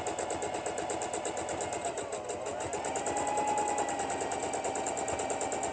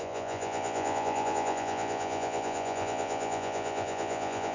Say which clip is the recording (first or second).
first